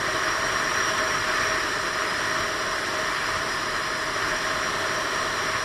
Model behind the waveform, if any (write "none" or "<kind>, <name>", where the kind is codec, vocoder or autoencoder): none